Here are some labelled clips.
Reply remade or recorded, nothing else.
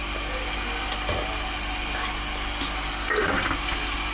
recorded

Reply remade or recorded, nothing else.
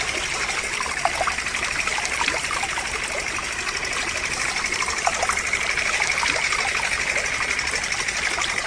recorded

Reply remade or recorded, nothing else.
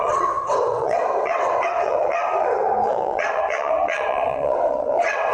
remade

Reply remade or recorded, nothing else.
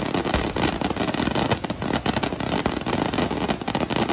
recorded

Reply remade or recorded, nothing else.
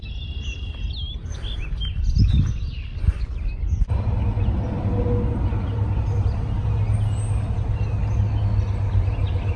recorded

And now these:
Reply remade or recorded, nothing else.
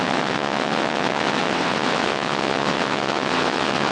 remade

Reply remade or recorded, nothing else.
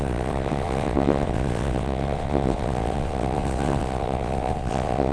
remade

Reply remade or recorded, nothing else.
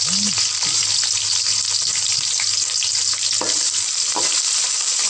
recorded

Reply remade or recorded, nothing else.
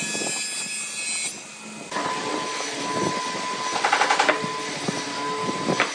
recorded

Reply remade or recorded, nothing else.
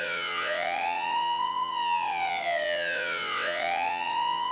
remade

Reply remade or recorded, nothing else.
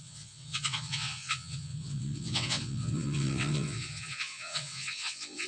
remade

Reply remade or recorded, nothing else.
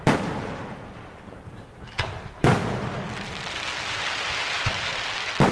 recorded